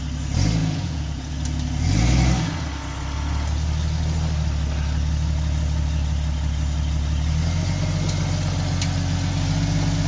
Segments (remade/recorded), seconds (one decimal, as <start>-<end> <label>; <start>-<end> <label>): 0.0-0.6 recorded; 0.6-1.3 remade; 1.3-10.1 recorded